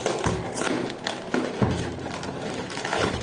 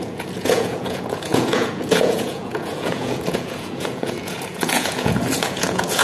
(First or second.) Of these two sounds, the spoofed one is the second